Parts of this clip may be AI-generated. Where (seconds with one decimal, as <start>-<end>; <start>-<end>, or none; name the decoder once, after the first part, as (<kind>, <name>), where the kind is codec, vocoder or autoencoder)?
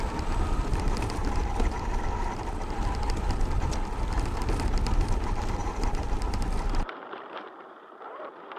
1.2-2.0 (vocoder, BigVGAN v2); 5.6-8.6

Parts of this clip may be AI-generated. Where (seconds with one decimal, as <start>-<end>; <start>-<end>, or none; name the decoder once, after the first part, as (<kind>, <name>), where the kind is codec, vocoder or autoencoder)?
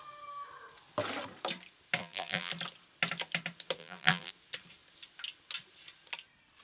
2.0-2.5 (vocoder, BigVGAN v2); 3.8-4.3